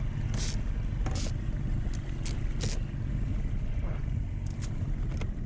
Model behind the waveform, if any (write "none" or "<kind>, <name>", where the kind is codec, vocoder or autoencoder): none